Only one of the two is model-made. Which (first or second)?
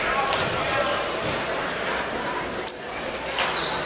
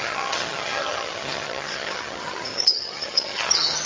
second